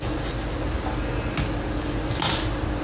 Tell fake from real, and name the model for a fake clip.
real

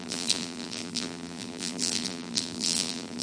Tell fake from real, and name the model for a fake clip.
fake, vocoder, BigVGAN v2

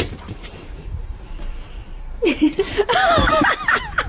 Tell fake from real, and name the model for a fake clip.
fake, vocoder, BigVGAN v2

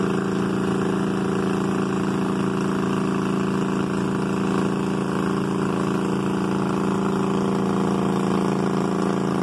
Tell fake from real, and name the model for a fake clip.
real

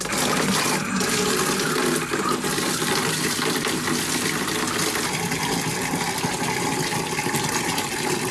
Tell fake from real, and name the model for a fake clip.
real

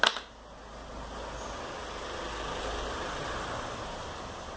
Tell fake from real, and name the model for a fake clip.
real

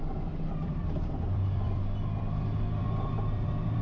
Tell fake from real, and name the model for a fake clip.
fake, vocoder, BigVGAN v2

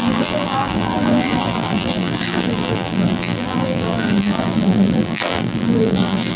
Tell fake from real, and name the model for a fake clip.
fake, vocoder, BigVGAN v2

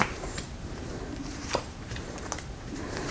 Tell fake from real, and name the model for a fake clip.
fake, vocoder, BigVGAN v2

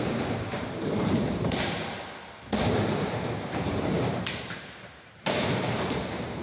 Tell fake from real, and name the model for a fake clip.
fake, vocoder, BigVGAN v2